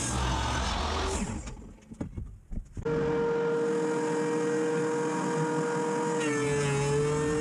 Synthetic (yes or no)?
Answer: no